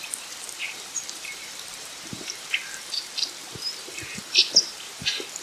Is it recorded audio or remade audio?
remade